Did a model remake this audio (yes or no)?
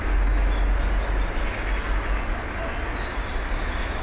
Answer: no